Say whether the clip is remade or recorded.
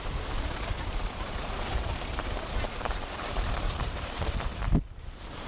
remade